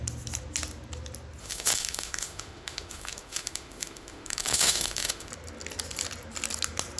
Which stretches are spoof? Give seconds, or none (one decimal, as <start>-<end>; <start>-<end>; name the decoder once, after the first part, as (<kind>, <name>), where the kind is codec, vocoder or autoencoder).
1.4-5.3 (autoencoder, DAC-VAE)